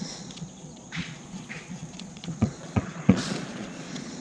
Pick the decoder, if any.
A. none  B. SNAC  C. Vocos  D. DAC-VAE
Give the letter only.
C